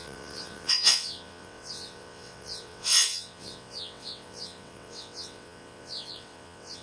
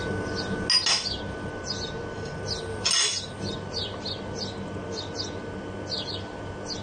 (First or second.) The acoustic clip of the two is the second